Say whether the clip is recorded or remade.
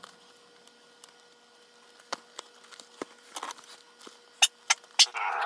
recorded